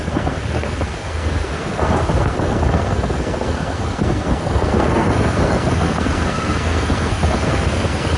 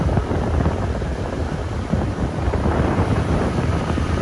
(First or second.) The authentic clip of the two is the second